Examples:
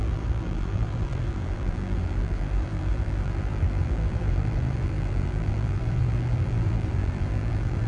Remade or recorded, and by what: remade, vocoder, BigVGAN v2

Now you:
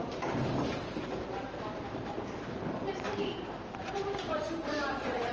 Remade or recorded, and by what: remade, vocoder, BigVGAN v2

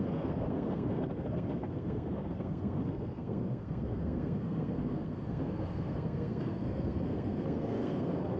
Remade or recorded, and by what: remade, codec, SNAC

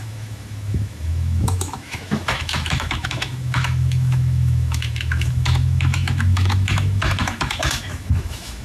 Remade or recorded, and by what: remade, autoencoder, DAC-VAE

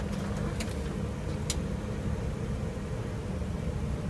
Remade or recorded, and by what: recorded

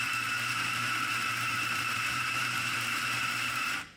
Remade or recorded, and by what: remade, vocoder, BigVGAN v2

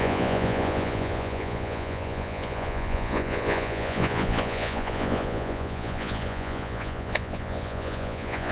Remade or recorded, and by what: remade, vocoder, Vocos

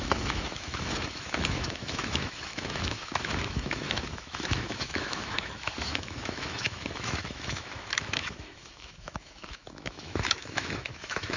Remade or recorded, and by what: remade, autoencoder, DAC-VAE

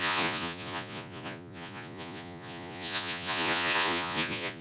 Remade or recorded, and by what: remade, vocoder, Vocos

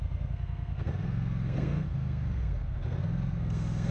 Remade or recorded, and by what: remade, codec, SNAC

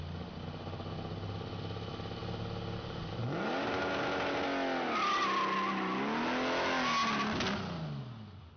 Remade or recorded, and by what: recorded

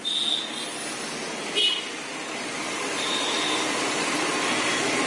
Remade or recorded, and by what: recorded